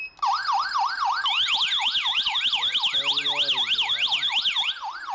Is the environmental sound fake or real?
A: real